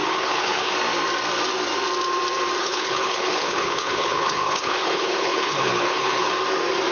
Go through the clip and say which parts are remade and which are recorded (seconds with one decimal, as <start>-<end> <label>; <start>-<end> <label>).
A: 0.0-0.7 remade; 0.7-2.6 recorded; 2.6-6.3 remade; 6.3-6.9 recorded